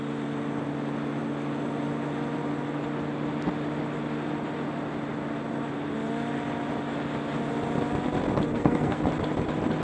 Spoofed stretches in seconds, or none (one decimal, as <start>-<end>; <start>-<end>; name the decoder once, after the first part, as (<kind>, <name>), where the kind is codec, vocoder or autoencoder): 8.5-9.0 (codec, SNAC)